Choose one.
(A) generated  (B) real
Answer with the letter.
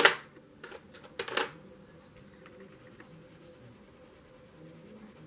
B